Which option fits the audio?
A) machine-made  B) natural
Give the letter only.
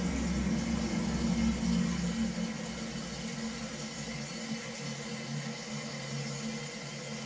B